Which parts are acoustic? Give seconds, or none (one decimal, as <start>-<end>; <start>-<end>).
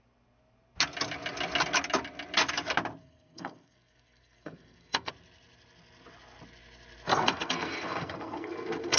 0.0-3.0; 5.1-7.1